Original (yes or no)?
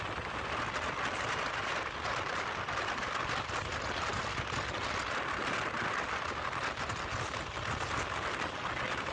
yes